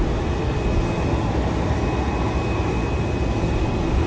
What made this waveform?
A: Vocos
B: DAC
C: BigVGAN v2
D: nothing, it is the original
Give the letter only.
D